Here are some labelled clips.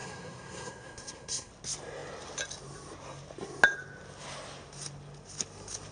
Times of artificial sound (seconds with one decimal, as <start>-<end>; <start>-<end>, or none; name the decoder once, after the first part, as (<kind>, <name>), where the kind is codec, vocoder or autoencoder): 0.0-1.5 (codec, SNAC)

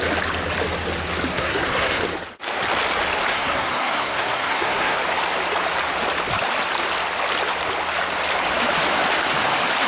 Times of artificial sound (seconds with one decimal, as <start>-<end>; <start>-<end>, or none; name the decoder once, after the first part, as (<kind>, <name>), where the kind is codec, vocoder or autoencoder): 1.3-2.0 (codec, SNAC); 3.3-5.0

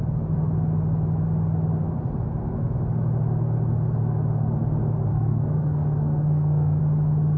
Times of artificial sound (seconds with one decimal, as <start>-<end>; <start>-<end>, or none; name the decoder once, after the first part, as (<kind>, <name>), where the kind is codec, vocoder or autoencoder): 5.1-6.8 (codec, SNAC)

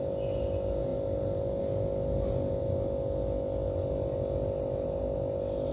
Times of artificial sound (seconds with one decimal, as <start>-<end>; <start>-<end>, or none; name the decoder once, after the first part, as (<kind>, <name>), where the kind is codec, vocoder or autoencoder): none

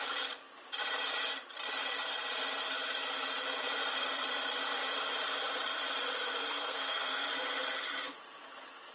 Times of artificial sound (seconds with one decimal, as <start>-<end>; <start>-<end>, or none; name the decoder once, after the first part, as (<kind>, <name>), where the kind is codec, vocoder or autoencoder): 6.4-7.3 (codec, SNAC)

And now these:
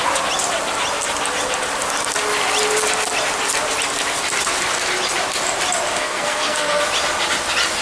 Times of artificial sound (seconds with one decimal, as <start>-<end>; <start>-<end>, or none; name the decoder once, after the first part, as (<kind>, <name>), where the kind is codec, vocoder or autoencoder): 5.9-6.8 (codec, SNAC)

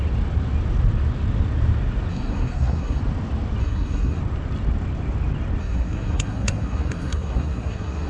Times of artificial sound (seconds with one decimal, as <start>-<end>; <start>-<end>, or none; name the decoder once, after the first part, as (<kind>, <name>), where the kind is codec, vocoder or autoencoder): 2.1-3.0 (codec, SNAC); 3.6-4.2; 5.6-8.1

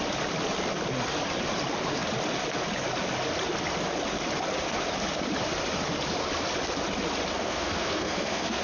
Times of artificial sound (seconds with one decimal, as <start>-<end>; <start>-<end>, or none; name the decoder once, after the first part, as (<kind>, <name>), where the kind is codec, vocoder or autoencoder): 7.3-8.6 (codec, SNAC)